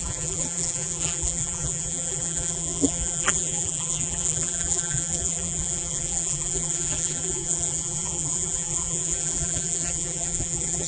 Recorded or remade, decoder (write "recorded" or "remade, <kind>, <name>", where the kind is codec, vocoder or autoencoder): remade, vocoder, BigVGAN v2